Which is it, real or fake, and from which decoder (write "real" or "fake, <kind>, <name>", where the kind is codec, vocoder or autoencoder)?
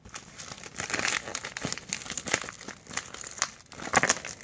real